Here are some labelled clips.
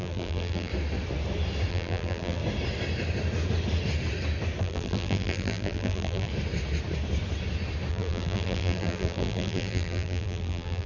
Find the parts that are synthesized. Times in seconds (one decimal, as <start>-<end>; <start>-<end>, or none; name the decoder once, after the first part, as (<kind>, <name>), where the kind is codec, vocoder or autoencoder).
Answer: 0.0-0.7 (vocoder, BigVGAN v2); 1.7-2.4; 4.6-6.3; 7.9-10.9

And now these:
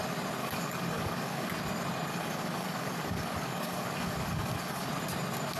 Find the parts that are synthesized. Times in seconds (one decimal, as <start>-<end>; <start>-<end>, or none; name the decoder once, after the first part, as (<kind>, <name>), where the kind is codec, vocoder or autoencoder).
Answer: 0.4-1.5 (codec, DAC); 2.1-4.9

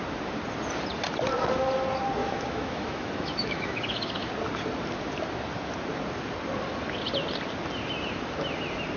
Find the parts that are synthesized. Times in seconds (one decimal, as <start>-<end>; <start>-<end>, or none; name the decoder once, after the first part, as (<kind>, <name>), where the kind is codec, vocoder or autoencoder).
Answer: 2.2-4.3 (autoencoder, DAC-VAE)

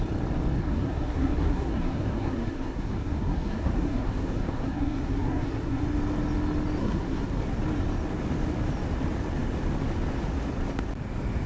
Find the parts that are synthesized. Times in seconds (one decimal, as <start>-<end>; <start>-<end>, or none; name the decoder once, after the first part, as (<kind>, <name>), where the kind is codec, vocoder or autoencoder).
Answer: 0.6-5.8 (codec, SNAC); 6.8-7.4

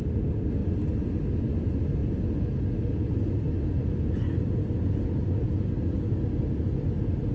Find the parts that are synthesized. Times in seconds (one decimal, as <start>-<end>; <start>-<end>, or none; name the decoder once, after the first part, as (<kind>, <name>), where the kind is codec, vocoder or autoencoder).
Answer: none